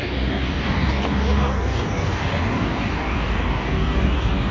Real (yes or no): no